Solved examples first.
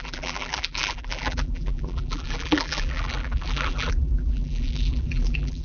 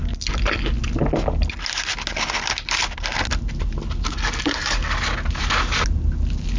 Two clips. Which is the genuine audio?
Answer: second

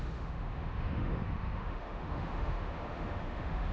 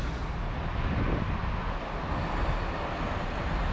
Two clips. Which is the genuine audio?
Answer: second